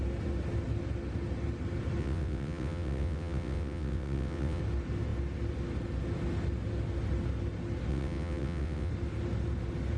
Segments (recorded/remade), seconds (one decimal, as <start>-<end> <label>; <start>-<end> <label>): 0.0-2.0 recorded; 2.0-4.6 remade; 4.6-7.9 recorded; 7.9-8.9 remade; 8.9-10.0 recorded